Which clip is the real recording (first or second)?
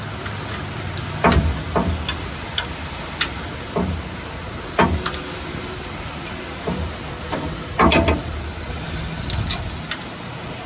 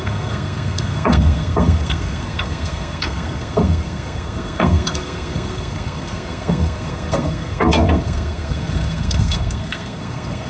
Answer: first